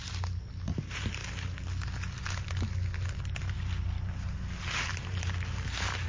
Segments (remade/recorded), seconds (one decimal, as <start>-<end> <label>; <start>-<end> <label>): 0.0-0.5 recorded; 0.5-1.2 remade; 1.2-4.6 recorded; 4.6-6.1 remade